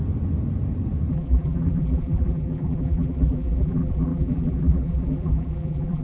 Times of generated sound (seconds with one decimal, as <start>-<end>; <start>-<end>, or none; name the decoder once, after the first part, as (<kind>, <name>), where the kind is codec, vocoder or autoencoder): 1.1-6.0 (vocoder, BigVGAN v2)